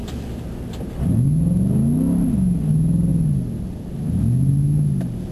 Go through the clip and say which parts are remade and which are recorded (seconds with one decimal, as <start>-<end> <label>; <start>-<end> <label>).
0.0-5.3 recorded